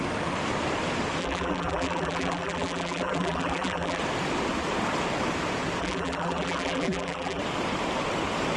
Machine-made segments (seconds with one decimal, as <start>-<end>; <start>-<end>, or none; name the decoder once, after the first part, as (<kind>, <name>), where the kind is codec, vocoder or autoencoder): 1.2-4.0 (vocoder, BigVGAN v2); 5.8-7.4